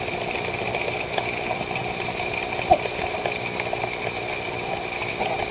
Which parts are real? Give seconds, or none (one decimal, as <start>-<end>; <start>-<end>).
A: 0.0-5.5